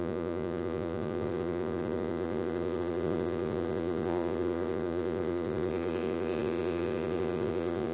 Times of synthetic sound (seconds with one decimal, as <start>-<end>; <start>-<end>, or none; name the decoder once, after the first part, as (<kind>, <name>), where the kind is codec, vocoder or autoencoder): 0.0-7.9 (vocoder, Vocos)